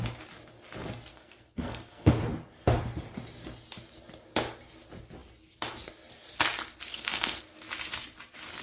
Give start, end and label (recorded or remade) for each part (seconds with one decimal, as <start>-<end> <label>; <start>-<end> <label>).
0.0-1.1 recorded; 1.1-2.2 remade; 2.2-6.9 recorded; 6.9-7.4 remade; 7.4-8.6 recorded